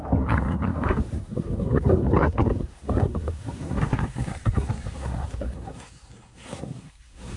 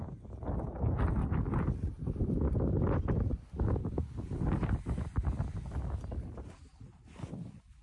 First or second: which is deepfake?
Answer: first